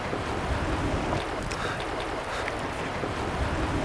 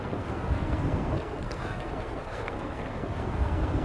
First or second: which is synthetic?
second